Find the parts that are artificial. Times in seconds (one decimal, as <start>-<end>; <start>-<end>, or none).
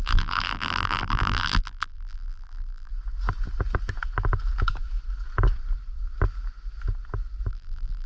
0.0-2.9; 7.5-8.1